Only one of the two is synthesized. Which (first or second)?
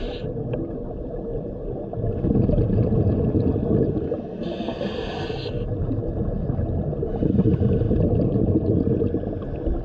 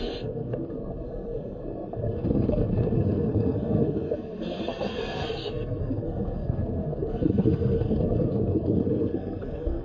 second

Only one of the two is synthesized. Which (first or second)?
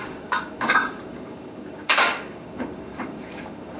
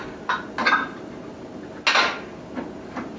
first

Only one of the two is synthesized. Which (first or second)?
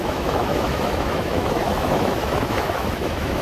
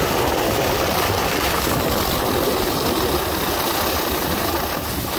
first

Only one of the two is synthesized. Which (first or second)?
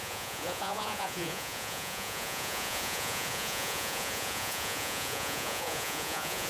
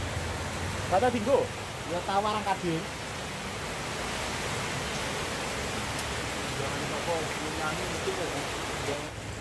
first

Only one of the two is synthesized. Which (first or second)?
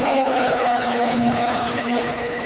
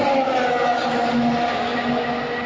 first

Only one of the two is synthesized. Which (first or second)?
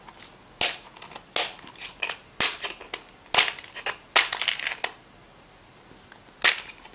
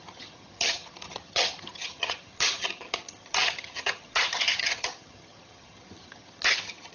second